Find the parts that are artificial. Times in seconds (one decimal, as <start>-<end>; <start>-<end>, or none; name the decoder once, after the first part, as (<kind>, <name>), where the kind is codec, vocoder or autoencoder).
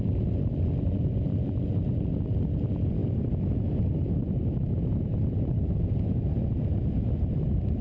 none